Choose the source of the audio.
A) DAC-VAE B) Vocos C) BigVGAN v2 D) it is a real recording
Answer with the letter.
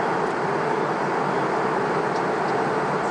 D